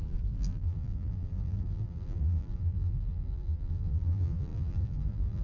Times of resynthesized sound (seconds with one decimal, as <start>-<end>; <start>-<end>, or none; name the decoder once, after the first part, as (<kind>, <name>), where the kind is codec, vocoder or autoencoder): 0.0-5.4 (vocoder, BigVGAN v2)

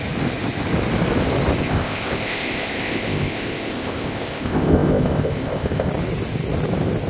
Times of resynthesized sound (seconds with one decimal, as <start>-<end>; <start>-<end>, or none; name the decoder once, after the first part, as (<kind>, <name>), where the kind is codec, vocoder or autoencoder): 1.6-5.9 (codec, ZipCodec)

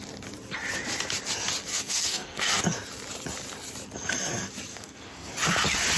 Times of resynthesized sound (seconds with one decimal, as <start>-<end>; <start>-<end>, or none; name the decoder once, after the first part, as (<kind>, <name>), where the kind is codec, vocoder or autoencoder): 1.7-2.6 (codec, SNAC); 4.7-5.3

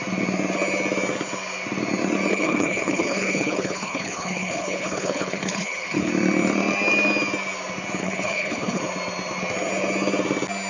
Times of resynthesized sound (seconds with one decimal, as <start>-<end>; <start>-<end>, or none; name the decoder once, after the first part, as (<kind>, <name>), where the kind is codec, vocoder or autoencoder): 2.3-6.1 (codec, HILCodec); 8.0-8.8

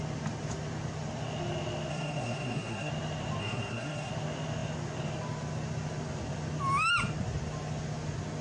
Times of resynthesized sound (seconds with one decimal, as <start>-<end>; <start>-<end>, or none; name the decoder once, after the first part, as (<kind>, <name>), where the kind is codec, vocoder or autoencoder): 1.9-2.9 (codec, SNAC); 3.4-4.1

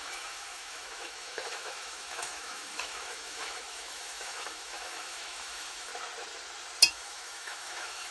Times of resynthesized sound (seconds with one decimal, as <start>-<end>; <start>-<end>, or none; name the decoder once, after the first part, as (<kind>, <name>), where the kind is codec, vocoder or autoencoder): 0.0-5.9 (autoencoder, DAC-VAE); 6.9-8.1